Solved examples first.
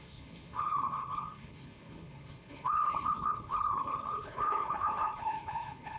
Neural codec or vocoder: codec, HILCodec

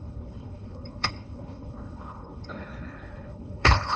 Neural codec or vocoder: codec, HILCodec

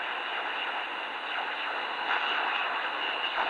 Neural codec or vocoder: none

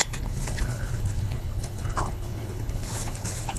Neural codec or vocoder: codec, HILCodec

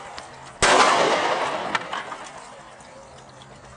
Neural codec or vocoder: none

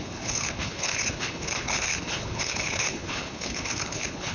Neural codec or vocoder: codec, HILCodec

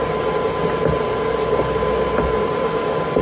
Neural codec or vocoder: none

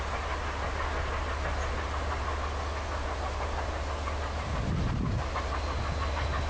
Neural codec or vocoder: none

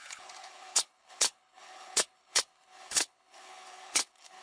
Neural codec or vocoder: codec, HILCodec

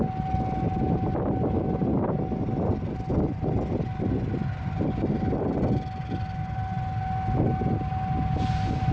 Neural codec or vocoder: none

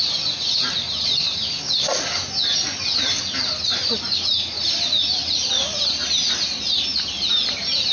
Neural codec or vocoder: none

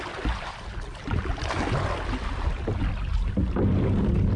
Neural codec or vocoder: none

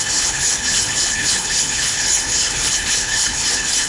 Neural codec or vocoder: codec, HILCodec